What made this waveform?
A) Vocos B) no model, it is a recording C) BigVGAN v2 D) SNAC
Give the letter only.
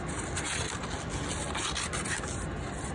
B